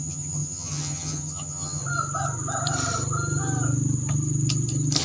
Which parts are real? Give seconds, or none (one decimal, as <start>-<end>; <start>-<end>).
1.8-5.0